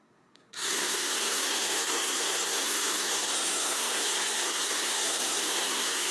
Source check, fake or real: fake